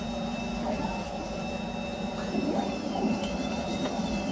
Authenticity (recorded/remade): remade